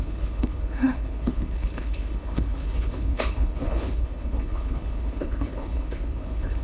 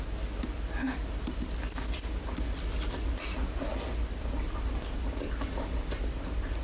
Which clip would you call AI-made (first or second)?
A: first